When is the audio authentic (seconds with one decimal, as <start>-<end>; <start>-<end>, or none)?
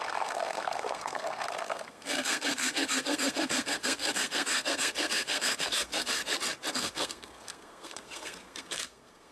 6.2-6.7